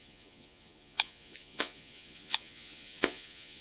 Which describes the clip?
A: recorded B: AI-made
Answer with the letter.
B